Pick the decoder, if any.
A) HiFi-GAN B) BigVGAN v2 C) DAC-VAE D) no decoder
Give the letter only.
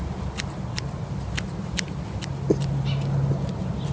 D